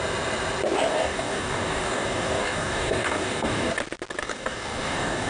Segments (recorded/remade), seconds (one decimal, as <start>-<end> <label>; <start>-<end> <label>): 0.0-0.9 recorded; 0.9-3.7 remade; 3.7-4.2 recorded; 4.2-5.3 remade